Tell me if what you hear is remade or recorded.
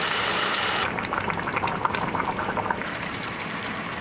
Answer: remade